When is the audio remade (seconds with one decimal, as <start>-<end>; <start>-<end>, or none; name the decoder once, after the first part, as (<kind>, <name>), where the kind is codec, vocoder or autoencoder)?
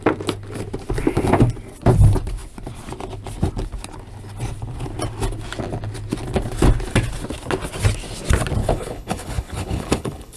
8.6-10.4 (codec, HILCodec)